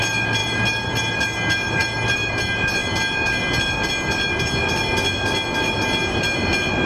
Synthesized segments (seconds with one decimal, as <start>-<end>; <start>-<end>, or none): 0.4-1.2; 1.8-2.4